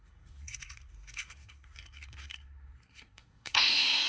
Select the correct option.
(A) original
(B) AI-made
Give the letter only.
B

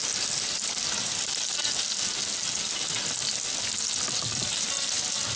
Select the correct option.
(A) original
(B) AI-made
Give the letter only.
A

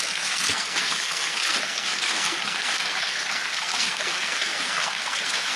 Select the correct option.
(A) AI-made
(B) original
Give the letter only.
A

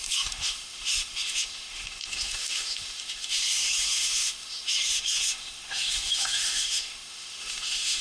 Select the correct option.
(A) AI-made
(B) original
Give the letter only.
A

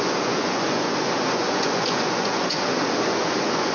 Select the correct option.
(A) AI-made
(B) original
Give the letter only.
A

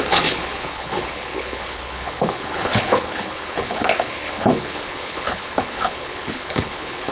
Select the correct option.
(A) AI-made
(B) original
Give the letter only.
A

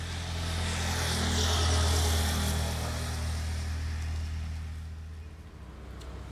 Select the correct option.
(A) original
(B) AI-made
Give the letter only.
A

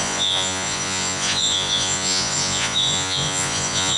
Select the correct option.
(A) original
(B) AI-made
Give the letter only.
B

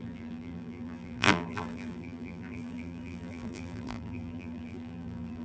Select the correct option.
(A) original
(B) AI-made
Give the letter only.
B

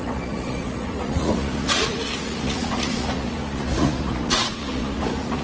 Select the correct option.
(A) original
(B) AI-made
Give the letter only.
B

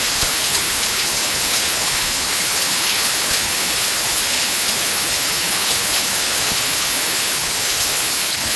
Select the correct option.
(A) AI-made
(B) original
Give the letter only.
A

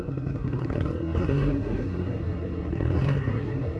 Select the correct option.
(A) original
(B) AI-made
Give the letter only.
B